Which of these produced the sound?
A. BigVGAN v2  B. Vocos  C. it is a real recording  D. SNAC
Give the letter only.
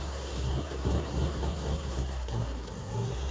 D